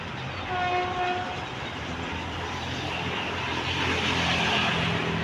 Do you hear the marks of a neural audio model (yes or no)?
no